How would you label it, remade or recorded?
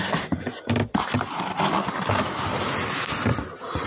recorded